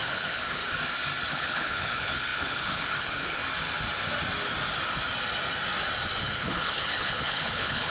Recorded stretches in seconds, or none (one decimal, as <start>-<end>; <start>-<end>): 0.6-1.3; 3.4-6.2